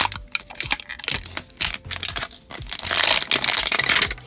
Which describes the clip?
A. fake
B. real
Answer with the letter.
B